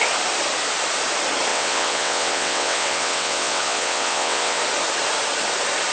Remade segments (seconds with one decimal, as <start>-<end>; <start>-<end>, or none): 1.5-4.6